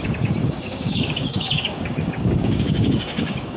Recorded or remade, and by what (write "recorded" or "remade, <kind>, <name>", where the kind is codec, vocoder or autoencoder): remade, codec, DAC